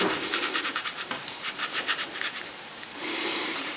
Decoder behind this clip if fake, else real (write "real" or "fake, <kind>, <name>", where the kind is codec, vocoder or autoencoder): fake, vocoder, BigVGAN v2